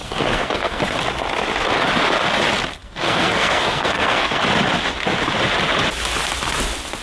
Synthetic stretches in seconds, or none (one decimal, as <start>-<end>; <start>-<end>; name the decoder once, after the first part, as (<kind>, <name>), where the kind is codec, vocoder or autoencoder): 0.0-0.8 (codec, SNAC); 2.8-4.4

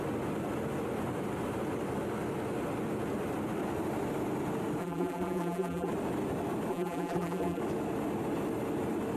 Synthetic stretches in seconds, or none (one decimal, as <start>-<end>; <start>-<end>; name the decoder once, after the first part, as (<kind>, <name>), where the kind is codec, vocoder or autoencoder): 4.8-5.9 (vocoder, BigVGAN v2); 6.7-7.6

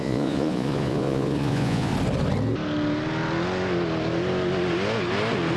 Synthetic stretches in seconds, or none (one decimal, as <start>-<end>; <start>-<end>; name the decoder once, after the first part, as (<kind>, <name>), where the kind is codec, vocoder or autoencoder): 0.0-1.9 (vocoder, Vocos)

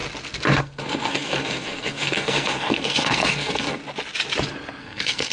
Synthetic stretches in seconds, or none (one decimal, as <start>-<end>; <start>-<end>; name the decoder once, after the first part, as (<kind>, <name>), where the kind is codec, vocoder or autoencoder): 0.6-3.8 (codec, SNAC); 4.8-5.3

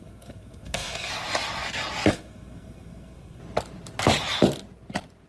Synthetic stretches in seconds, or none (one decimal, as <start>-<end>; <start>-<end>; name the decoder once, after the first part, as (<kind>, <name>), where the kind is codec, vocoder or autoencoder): 0.0-1.1 (codec, SNAC); 2.1-3.4

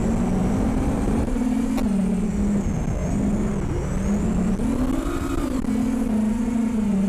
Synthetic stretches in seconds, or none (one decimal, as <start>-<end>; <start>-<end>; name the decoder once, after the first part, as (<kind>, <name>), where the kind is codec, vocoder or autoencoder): 0.4-1.7 (vocoder, BigVGAN v2); 5.0-5.6

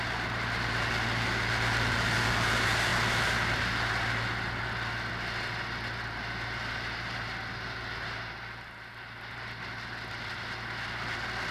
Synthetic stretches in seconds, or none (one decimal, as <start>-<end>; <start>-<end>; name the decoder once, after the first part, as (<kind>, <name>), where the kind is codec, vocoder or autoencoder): none